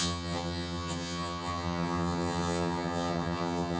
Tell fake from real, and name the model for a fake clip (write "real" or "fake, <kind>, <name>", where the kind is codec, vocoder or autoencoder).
fake, vocoder, HiFi-GAN